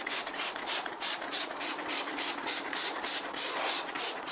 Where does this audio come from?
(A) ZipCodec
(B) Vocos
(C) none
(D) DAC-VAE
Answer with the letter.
B